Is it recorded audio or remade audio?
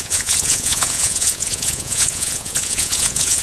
remade